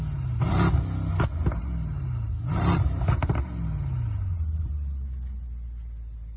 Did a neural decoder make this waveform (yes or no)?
no